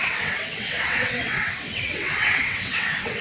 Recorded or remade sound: remade